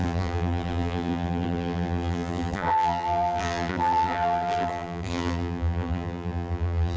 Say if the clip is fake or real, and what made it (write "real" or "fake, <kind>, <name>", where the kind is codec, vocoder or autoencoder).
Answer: fake, vocoder, BigVGAN v2